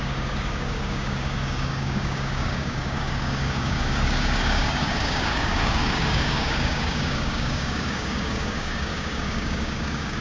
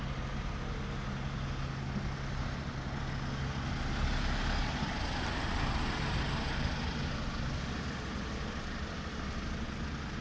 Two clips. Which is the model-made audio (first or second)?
first